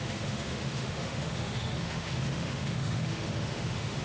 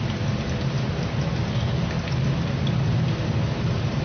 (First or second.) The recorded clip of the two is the second